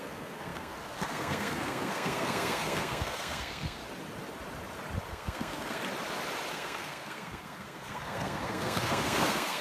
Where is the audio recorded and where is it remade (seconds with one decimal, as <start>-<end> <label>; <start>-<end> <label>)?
0.0-3.8 remade; 3.8-5.1 recorded; 5.1-5.8 remade; 5.8-6.5 recorded; 6.5-9.6 remade